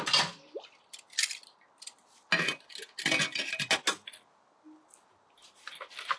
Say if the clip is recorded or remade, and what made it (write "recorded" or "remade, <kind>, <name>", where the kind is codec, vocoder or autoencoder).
recorded